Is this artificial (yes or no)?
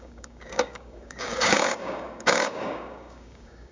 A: yes